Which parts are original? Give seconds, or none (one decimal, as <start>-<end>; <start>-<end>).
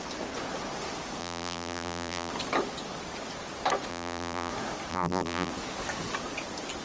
0.0-1.2; 2.3-3.9; 4.5-4.9; 5.5-6.8